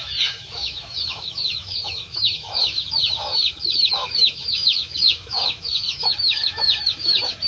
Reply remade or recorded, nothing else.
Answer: remade